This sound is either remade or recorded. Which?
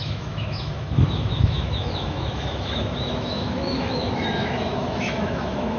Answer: remade